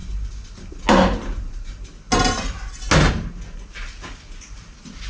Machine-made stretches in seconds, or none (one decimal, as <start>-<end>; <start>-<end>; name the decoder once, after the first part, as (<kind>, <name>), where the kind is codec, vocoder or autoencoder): none

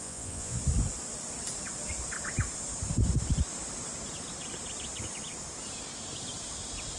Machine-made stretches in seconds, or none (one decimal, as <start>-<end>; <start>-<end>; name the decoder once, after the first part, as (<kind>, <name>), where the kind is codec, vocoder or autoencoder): 0.0-0.6 (vocoder, Vocos)

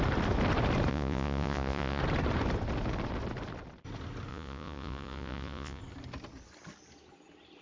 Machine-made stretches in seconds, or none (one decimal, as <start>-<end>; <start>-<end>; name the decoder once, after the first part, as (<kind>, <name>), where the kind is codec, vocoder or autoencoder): 0.9-2.0 (vocoder, Vocos); 4.3-5.8

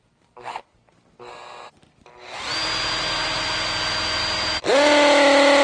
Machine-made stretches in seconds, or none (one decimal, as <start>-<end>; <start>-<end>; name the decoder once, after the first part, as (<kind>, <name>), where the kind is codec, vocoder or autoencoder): none

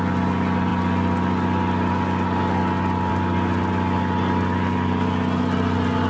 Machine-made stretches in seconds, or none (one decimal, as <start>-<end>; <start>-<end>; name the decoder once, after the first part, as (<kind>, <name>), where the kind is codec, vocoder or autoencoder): none

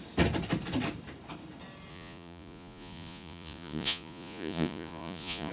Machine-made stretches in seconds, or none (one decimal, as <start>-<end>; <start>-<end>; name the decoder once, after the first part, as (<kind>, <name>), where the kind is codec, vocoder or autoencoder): 1.9-5.5 (vocoder, Vocos)